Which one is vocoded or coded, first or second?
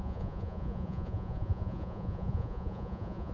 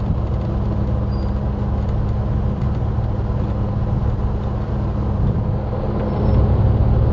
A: first